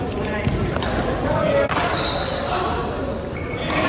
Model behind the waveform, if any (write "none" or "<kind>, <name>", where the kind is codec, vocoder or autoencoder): none